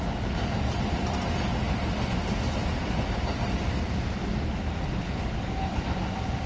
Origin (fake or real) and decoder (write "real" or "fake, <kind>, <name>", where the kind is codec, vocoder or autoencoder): real